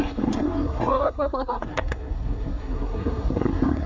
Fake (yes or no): yes